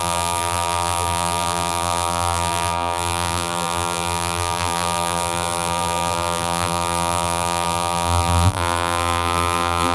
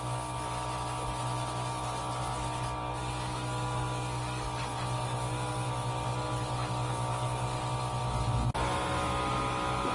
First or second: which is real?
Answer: second